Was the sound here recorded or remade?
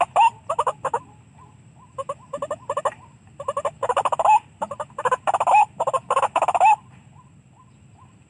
recorded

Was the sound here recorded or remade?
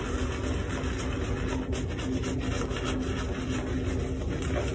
recorded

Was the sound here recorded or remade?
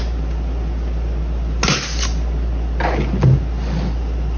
recorded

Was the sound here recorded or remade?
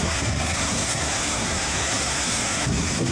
remade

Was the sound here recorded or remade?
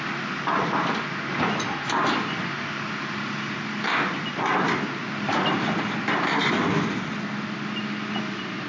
recorded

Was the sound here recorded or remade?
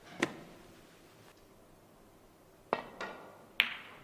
recorded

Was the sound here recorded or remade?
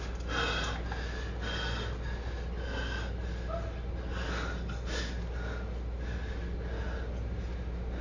recorded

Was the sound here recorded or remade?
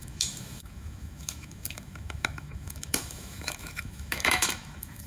remade